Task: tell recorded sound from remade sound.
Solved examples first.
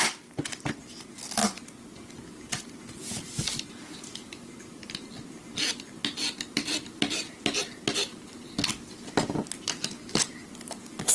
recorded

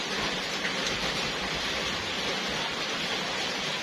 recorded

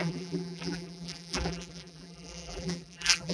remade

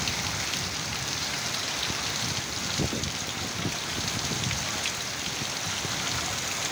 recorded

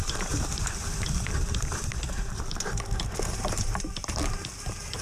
remade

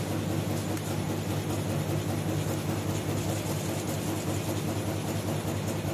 recorded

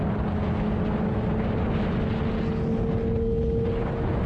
recorded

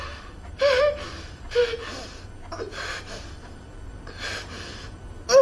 remade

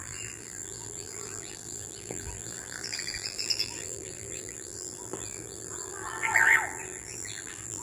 remade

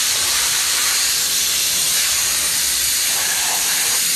remade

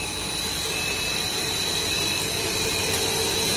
recorded